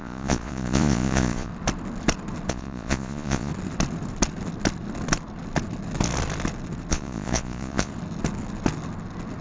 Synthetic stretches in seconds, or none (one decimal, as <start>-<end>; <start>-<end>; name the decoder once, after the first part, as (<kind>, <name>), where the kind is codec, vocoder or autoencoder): 0.0-1.5 (vocoder, Vocos); 2.5-3.5; 6.9-7.9